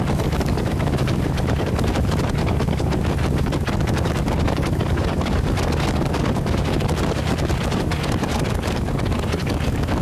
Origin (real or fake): fake